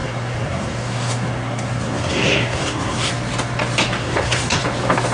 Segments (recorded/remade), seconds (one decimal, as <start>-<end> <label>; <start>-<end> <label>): 0.0-3.1 remade; 3.1-4.0 recorded; 4.0-4.6 remade; 4.6-5.1 recorded